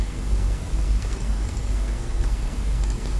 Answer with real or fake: fake